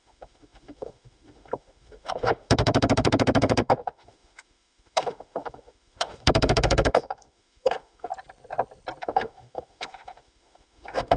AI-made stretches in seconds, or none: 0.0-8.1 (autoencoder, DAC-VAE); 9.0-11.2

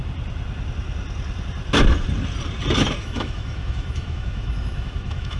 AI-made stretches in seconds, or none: 3.0-5.4 (autoencoder, DAC-VAE)

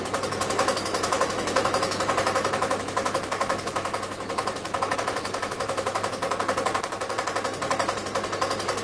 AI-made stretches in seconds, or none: 0.0-6.2 (autoencoder, DAC-VAE)

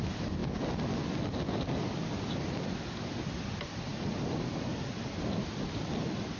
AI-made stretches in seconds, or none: none

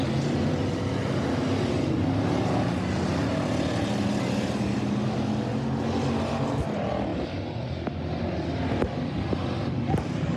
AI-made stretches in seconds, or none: none

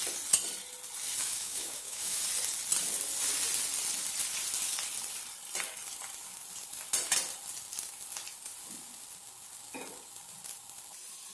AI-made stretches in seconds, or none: 1.2-2.2 (autoencoder, DAC-VAE)